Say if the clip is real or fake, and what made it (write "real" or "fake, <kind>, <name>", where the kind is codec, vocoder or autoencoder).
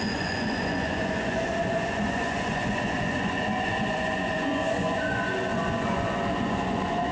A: fake, vocoder, Vocos